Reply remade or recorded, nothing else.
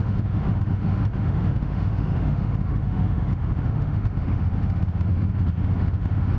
remade